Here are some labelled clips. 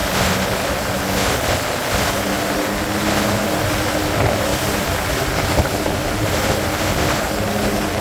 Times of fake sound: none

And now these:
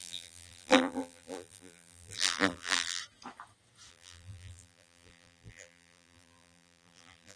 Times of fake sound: 0.0-3.0 (vocoder, BigVGAN v2); 3.9-7.4